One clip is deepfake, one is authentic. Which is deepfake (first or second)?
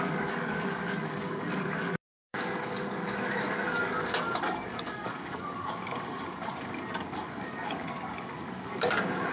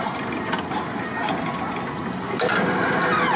first